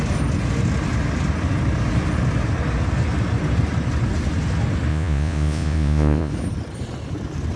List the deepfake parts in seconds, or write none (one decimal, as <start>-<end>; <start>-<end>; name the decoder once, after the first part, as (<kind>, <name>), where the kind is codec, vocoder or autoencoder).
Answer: 4.9-6.3 (vocoder, Vocos)